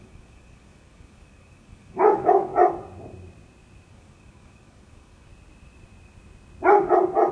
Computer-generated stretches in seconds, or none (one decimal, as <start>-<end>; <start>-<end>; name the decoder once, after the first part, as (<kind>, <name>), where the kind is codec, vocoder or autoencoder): 0.0-2.5 (codec, DAC); 3.9-5.3